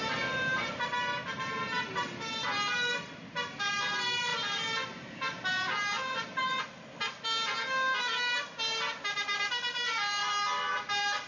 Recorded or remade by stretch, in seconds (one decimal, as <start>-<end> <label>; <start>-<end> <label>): 0.0-0.5 recorded; 0.5-3.7 remade; 3.7-11.3 recorded